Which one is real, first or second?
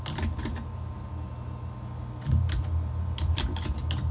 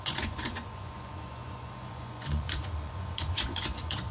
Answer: first